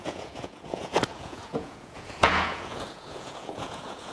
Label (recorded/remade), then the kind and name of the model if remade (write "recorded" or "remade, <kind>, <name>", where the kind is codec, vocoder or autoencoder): remade, vocoder, Vocos